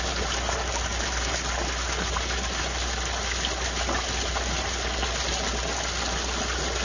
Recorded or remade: recorded